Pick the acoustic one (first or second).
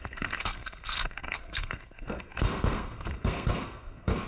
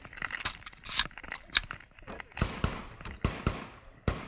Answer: second